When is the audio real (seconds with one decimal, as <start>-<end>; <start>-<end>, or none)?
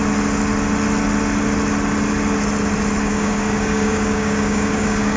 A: 0.0-3.0